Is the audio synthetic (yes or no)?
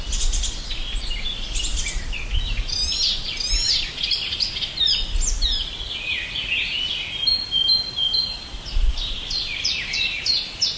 no